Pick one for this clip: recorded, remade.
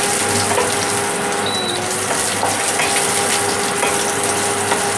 recorded